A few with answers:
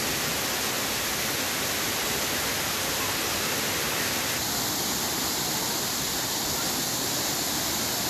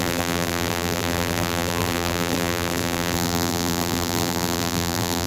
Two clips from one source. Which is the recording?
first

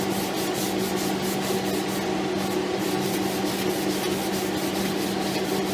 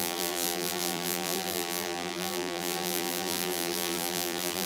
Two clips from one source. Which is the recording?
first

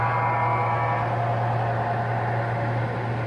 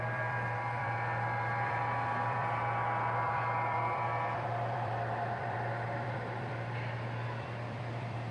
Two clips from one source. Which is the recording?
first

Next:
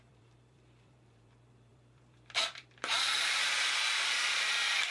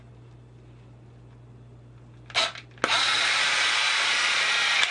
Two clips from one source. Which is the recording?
second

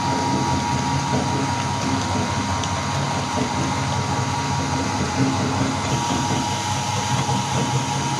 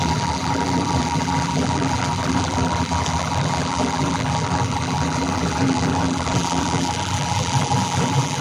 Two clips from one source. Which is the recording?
first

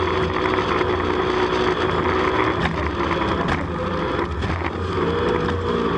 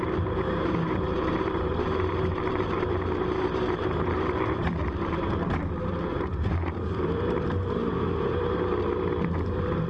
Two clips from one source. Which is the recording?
first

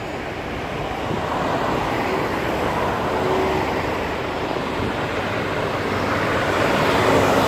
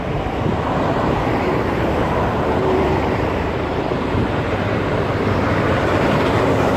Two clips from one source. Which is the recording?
first